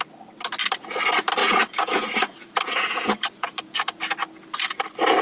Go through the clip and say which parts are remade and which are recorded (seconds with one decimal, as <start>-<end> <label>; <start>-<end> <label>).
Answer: 0.0-1.4 recorded; 1.4-4.0 remade; 4.0-5.2 recorded